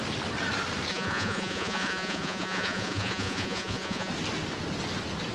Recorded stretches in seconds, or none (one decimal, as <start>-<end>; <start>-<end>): 0.0-0.9; 4.1-5.3